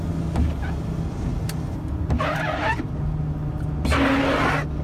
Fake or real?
real